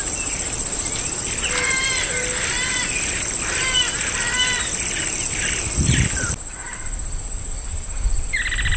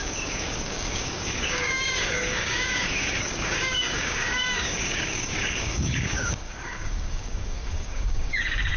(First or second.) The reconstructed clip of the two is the second